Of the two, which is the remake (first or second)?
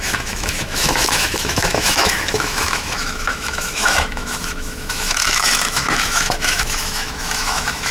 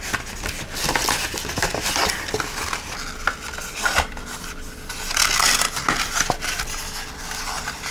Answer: first